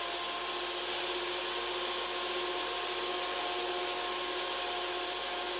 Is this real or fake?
real